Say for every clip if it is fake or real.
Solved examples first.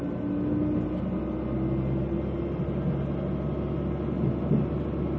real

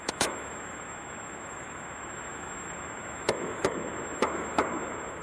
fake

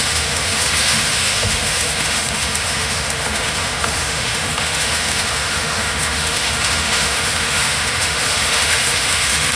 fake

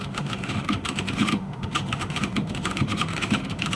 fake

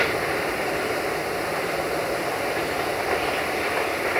real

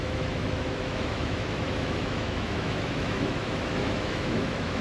fake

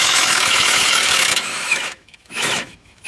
fake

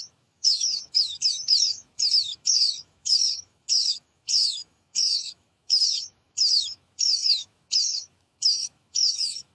fake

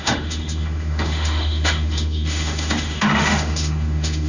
fake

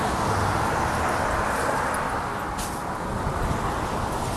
real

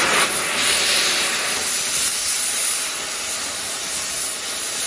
real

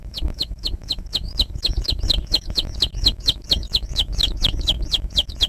fake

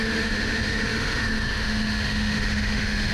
fake